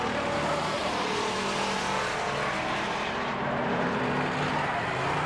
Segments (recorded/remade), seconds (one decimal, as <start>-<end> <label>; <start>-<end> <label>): 0.0-0.8 recorded; 0.8-4.0 remade; 4.0-5.3 recorded